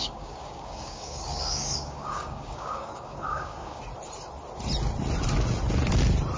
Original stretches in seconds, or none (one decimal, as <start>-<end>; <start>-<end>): 3.8-6.4